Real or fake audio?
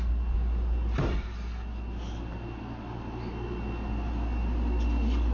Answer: real